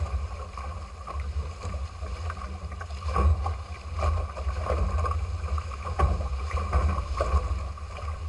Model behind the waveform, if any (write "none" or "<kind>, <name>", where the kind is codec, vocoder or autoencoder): none